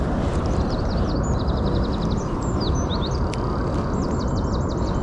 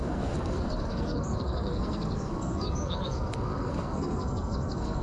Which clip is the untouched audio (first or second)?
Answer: first